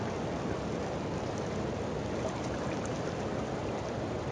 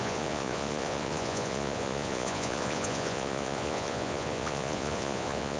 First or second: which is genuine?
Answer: first